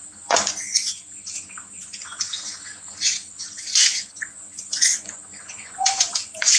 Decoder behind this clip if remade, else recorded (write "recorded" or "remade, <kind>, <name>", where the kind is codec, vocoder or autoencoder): remade, vocoder, Vocos